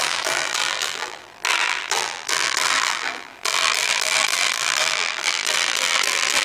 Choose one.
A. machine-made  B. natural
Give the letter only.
A